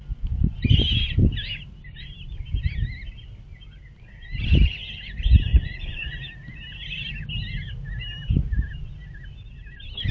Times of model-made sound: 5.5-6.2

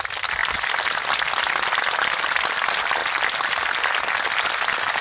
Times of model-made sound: none

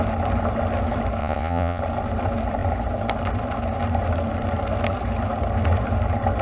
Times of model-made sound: 1.2-1.8